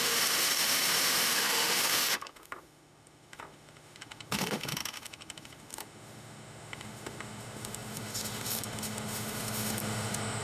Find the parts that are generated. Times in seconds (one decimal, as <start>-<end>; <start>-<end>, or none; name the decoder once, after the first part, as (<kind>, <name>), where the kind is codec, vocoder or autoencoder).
0.0-10.4 (autoencoder, DAC-VAE)